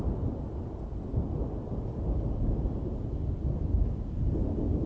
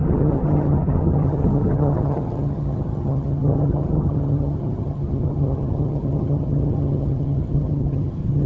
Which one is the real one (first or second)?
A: first